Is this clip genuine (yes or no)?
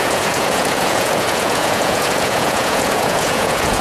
no